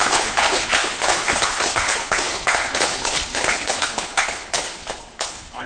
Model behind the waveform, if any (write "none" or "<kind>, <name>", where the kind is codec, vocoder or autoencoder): codec, HILCodec